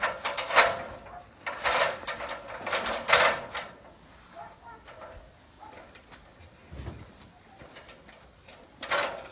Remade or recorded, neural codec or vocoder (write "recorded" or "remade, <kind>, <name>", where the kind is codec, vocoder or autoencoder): recorded